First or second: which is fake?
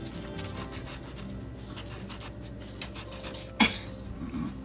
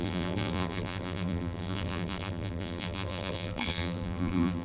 second